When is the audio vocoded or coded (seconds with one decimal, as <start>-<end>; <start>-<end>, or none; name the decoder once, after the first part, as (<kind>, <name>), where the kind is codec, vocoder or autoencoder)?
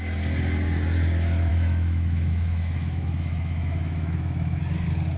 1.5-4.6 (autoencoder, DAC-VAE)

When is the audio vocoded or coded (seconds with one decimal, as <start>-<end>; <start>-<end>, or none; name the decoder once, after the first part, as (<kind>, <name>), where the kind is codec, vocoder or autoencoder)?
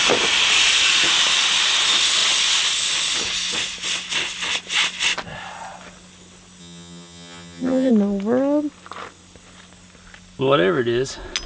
6.6-7.9 (vocoder, HiFi-GAN)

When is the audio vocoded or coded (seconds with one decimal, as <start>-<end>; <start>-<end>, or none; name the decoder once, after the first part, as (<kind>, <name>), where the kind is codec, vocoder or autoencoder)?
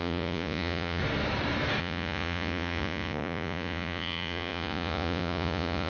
0.0-1.0 (vocoder, Vocos); 1.8-5.9